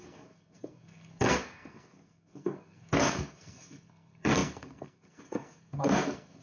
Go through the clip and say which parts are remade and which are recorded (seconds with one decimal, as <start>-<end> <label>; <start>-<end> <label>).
0.0-6.4 remade